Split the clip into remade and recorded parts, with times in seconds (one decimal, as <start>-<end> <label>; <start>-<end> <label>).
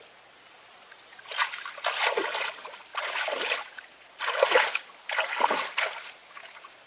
0.0-6.9 recorded